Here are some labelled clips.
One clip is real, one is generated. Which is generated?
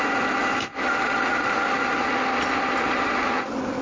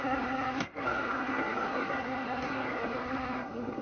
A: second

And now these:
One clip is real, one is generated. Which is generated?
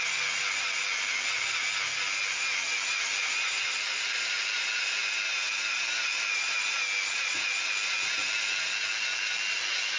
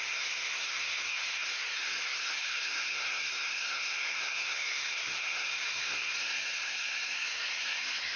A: second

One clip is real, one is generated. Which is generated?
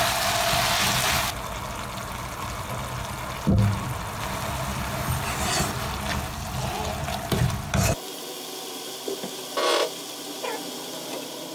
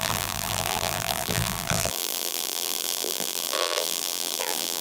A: second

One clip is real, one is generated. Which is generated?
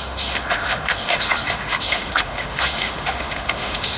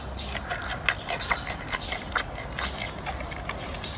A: first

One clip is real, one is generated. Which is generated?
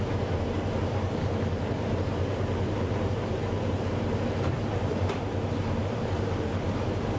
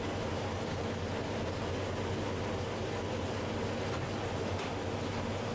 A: first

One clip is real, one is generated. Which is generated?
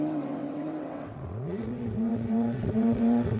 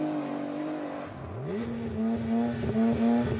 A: first